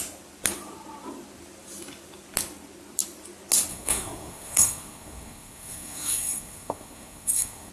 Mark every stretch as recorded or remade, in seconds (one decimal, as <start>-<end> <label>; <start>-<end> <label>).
0.0-3.7 recorded; 3.7-7.7 remade